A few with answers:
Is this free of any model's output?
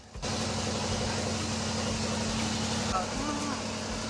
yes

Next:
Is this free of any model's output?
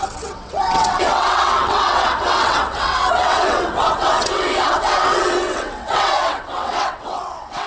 no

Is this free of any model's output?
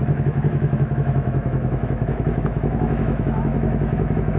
no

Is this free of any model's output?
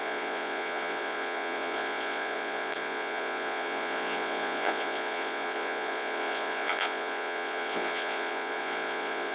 no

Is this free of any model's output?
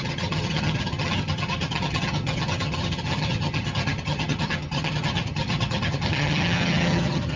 no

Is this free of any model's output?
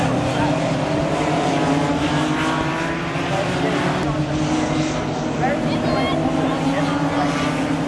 yes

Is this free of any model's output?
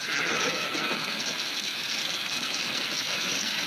no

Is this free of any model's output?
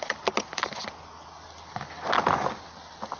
yes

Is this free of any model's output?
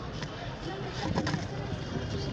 no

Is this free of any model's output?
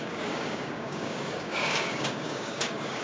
no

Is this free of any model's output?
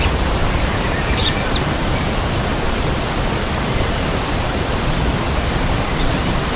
no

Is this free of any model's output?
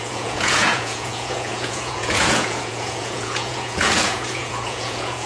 no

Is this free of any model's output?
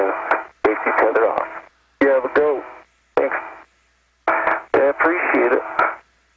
yes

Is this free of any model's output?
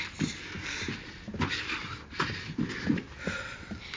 yes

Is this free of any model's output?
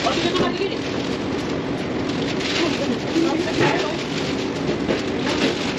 yes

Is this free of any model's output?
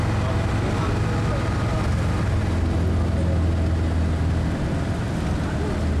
yes